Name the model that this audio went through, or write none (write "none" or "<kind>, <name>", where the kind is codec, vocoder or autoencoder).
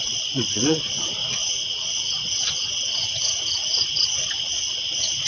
vocoder, WaveNeXt